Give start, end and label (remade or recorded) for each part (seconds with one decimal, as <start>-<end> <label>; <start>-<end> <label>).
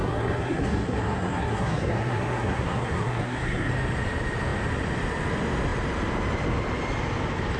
0.0-3.7 remade; 3.7-7.6 recorded